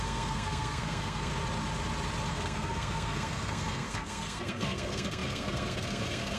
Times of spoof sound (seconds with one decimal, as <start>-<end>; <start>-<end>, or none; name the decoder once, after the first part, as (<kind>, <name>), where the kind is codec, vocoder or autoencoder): 0.0-1.3 (codec, SNAC); 2.3-6.4